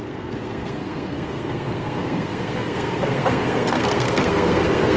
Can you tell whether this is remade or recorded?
remade